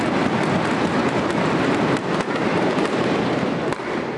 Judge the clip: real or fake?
real